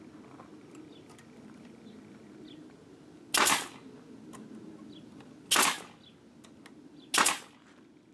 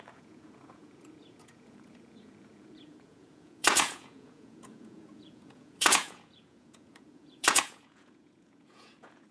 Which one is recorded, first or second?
first